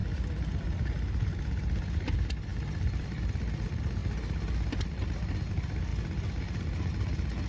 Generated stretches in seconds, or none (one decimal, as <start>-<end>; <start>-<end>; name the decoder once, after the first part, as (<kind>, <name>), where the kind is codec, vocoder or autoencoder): 0.0-0.9 (vocoder, BigVGAN v2); 2.5-3.2